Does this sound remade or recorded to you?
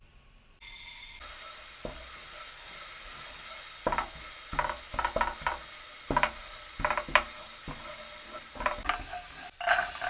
recorded